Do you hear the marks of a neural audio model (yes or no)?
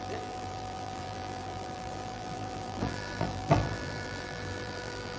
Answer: yes